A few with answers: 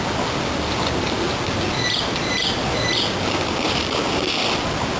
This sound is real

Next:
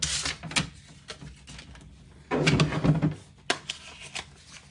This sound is real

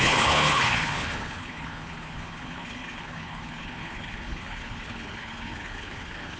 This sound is fake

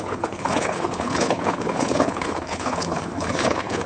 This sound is fake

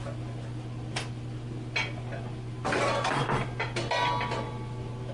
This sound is real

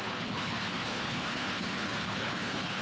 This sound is fake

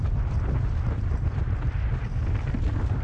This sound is real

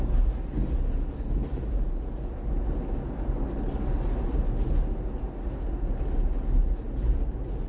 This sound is real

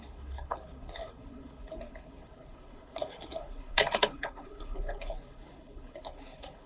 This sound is fake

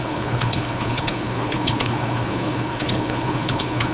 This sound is fake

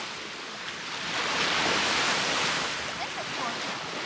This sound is real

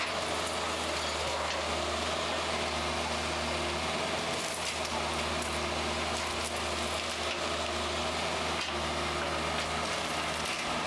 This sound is real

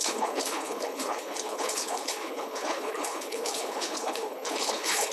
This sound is fake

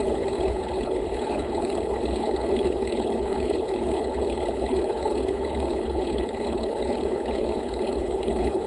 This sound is fake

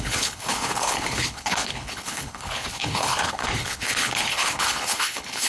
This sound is fake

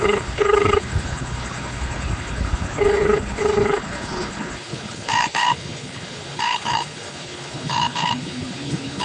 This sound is fake